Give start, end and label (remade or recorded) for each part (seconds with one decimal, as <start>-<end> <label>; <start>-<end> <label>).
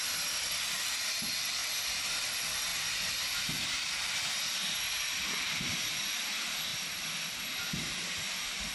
0.0-1.6 recorded; 1.6-2.3 remade; 2.3-2.7 recorded; 2.7-4.4 remade; 4.4-6.7 recorded; 6.7-7.4 remade; 7.4-8.7 recorded